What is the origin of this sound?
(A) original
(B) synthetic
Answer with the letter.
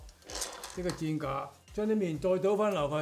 A